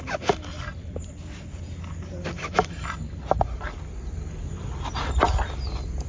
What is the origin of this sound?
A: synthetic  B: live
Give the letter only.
B